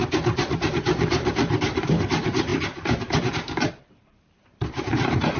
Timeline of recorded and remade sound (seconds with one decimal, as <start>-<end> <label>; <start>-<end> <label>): 0.0-5.4 remade